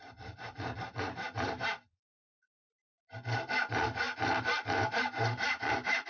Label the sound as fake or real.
fake